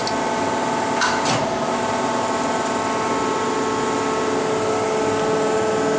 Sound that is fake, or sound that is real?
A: real